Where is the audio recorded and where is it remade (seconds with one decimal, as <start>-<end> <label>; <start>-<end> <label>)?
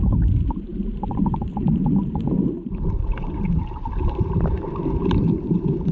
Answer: 0.0-5.9 remade